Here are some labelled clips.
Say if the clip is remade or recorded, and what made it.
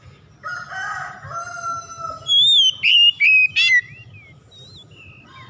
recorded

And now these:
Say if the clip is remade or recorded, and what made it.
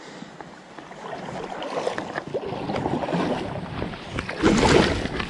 recorded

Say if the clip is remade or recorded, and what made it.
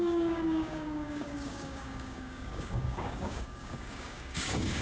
remade, codec, DAC